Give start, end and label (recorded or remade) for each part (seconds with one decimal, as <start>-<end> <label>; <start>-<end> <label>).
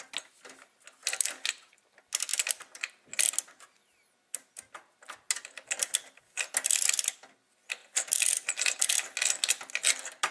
0.0-10.3 recorded